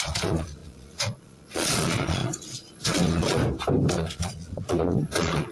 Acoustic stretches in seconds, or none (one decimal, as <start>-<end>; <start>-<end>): 3.4-3.9